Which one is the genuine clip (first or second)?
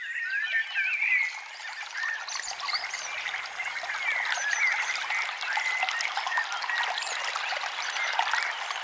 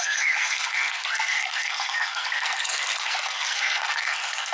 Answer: first